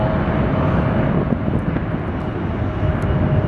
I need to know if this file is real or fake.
real